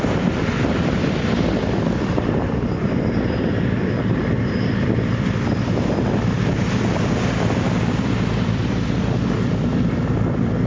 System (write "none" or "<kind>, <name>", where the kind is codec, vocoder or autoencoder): vocoder, BigVGAN v2